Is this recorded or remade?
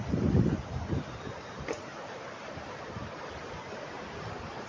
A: recorded